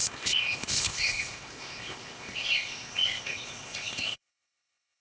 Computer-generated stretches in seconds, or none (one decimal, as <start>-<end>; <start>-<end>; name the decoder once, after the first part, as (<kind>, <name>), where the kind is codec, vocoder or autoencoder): 0.0-5.0 (codec, ZipCodec)